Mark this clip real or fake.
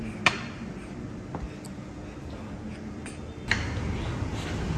real